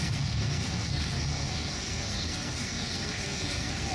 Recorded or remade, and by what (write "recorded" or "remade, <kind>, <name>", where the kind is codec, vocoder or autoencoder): remade, codec, SNAC